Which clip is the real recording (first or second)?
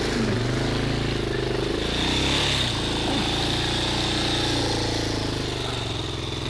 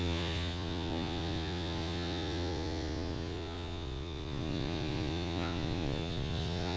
first